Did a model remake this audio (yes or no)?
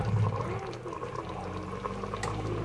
no